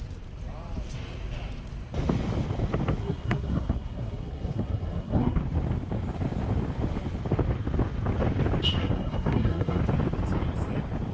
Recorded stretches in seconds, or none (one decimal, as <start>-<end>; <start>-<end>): 0.0-3.0; 5.4-8.8; 9.8-11.1